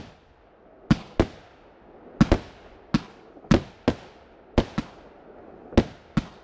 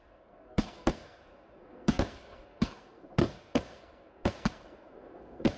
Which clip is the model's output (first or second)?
second